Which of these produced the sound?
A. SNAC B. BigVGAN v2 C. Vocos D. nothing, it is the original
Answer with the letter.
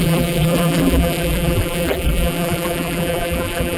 B